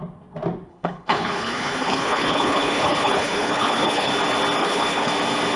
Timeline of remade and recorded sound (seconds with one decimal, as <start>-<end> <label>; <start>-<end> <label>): 0.0-0.7 recorded; 0.7-4.1 remade; 4.1-4.6 recorded; 4.6-5.1 remade; 5.1-5.6 recorded